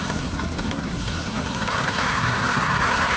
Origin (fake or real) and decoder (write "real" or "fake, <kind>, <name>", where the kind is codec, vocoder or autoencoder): fake, codec, SNAC